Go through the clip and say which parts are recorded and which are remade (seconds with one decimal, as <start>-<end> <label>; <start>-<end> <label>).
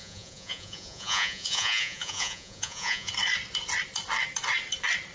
0.0-3.1 remade; 3.1-5.1 recorded